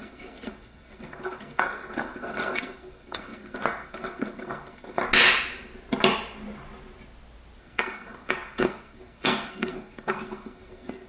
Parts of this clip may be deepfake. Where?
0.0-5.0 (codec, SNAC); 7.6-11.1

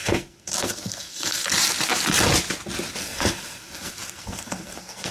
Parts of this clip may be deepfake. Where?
0.0-1.5 (codec, SNAC); 3.0-5.1

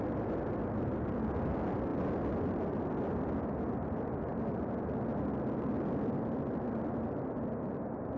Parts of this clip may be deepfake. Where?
none

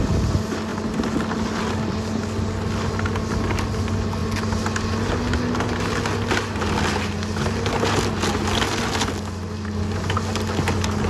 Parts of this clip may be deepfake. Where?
none

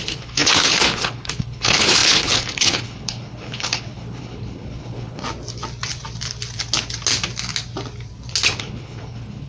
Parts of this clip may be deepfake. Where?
0.0-5.2 (codec, HILCodec); 8.6-9.5

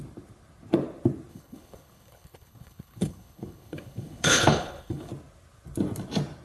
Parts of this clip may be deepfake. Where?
1.3-5.1 (codec, HILCodec)

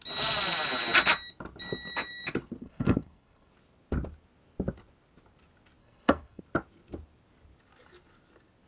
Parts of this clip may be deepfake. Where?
2.6-3.5 (codec, SNAC); 5.8-6.4